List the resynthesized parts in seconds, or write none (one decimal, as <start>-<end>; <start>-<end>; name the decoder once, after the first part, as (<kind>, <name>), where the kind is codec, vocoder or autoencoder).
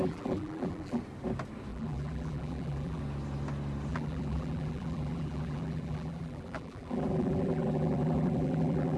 0.0-1.0 (vocoder, BigVGAN v2); 1.7-3.0; 3.9-9.0